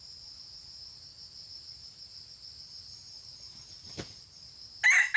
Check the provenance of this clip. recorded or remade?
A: recorded